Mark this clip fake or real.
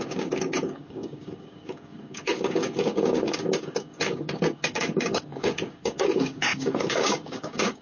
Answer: fake